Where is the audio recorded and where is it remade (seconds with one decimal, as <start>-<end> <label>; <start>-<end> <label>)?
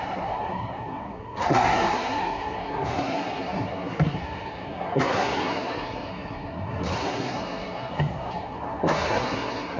0.0-9.8 remade